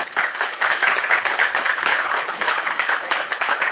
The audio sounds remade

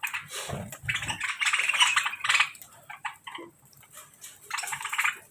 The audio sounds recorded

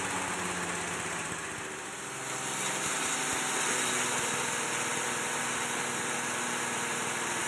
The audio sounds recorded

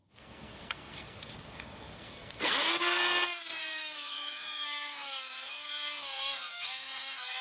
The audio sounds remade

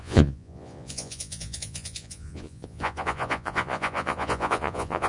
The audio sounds remade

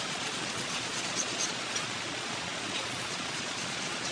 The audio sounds remade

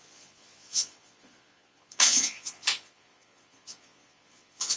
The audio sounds remade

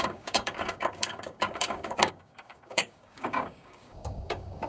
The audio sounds remade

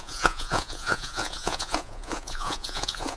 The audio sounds remade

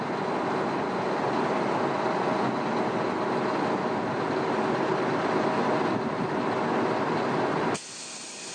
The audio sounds recorded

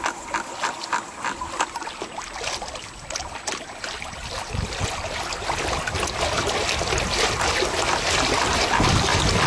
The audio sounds recorded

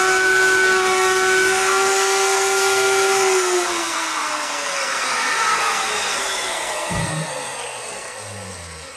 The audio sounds remade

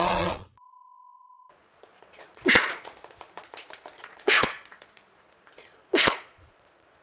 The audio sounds remade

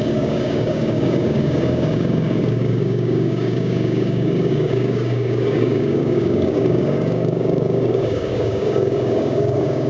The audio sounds remade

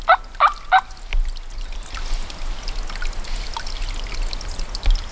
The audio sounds recorded